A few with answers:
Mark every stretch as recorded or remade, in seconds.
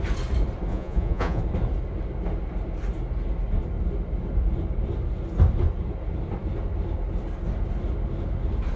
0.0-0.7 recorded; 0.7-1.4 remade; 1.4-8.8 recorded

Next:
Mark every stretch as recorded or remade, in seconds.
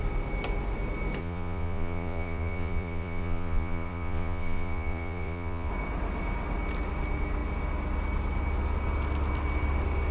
0.0-1.2 recorded; 1.2-5.7 remade; 5.7-10.1 recorded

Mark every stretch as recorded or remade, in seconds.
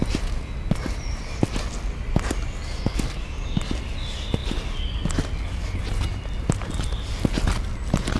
0.0-8.2 recorded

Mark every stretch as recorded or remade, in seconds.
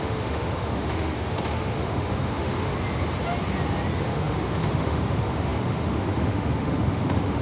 0.0-2.7 remade; 2.7-4.0 recorded; 4.0-7.4 remade